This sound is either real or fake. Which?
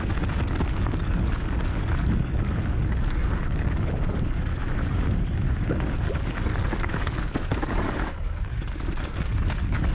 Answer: fake